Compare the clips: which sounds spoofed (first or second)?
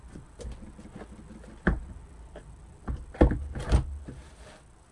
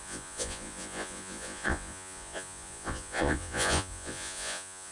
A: second